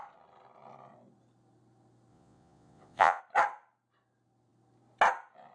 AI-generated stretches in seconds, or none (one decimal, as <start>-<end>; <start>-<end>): 2.1-3.2